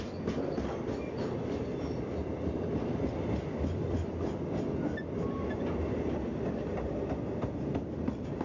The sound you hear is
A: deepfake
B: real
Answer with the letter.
B